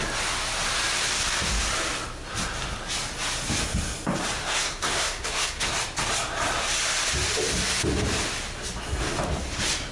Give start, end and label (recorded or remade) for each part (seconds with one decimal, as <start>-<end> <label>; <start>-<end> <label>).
0.0-4.4 recorded; 4.4-5.7 remade; 5.7-9.9 recorded